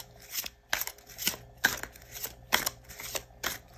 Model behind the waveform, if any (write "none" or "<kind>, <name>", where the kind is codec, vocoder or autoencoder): none